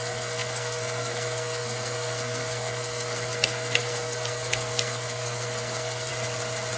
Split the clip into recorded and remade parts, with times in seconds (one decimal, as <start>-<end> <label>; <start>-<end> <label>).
0.0-6.1 remade; 6.1-6.8 recorded